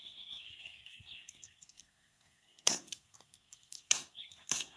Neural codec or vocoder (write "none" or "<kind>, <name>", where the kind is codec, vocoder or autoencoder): codec, SNAC